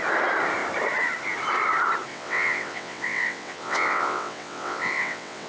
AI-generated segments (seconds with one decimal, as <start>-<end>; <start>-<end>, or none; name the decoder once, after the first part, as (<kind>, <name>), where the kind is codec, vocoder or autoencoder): 2.1-5.5 (vocoder, WaveNeXt)